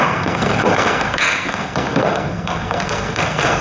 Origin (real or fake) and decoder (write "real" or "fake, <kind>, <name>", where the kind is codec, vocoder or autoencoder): fake, codec, SNAC